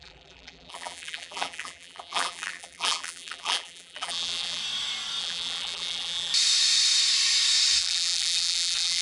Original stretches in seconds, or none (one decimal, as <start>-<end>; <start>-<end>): 4.6-5.2; 6.3-7.8